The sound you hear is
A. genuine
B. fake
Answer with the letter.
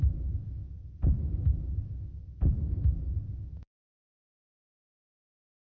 A